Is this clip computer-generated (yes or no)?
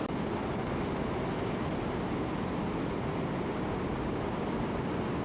no